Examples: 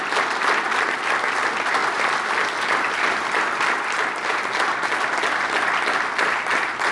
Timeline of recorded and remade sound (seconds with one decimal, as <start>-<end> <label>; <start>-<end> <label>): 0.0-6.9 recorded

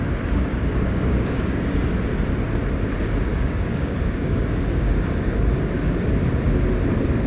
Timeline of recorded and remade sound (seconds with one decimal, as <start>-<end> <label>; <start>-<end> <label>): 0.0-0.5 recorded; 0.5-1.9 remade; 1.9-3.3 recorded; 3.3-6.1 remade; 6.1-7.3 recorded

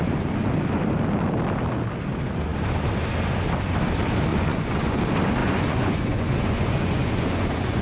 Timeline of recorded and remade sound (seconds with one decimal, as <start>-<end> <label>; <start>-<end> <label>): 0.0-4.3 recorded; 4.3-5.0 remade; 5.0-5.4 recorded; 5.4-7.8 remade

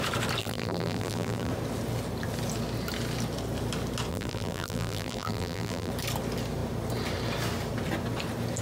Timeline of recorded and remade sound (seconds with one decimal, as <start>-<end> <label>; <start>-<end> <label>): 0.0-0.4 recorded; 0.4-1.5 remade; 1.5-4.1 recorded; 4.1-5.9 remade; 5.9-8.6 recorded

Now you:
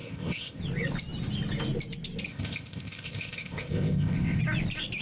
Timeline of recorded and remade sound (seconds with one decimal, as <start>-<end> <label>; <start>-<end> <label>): 0.0-0.6 remade; 0.6-2.3 recorded; 2.3-4.4 remade; 4.4-5.0 recorded

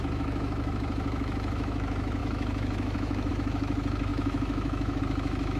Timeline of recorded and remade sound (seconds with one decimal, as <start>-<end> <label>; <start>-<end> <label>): 0.0-5.6 remade

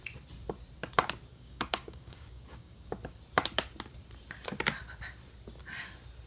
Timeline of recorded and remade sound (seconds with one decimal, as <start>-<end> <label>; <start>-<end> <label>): 0.0-1.3 recorded; 1.3-2.9 remade; 2.9-6.3 recorded

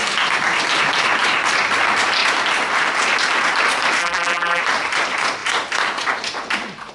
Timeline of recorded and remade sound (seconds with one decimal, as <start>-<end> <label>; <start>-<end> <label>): 0.0-4.0 recorded; 4.0-4.6 remade; 4.6-6.9 recorded